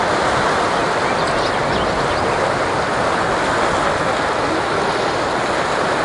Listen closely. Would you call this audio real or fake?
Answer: real